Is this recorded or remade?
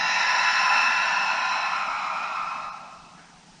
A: recorded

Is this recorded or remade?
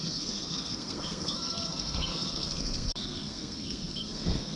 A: remade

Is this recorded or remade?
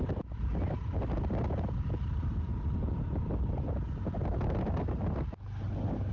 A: recorded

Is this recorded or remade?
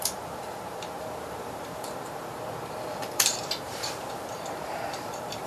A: remade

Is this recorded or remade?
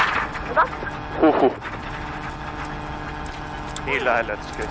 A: recorded